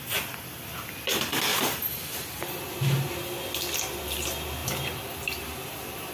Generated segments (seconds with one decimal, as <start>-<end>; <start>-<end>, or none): none